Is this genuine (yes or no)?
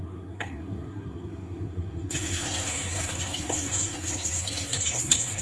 no